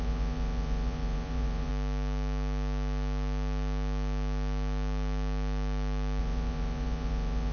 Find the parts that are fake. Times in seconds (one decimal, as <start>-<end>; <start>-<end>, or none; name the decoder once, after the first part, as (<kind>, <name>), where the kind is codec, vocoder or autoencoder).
0.0-1.7 (vocoder, Vocos); 6.2-7.5